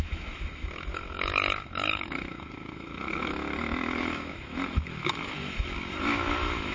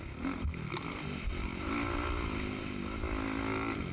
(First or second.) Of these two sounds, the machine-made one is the first